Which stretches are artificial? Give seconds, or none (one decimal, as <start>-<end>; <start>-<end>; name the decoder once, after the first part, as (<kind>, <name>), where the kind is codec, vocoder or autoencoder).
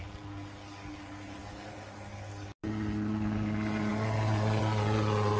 none